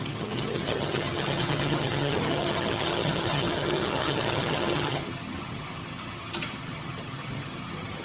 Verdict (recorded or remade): remade